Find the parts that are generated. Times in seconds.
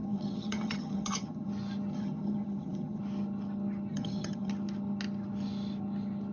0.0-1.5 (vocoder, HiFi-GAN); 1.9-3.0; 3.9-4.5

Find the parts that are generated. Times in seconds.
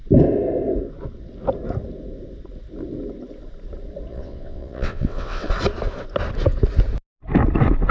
4.1-5.5 (vocoder, WaveNeXt)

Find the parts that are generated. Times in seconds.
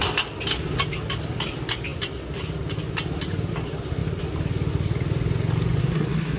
5.8-6.4 (codec, SNAC)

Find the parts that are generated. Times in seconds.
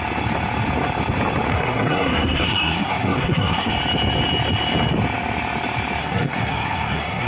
1.5-3.7 (codec, SNAC); 6.0-7.3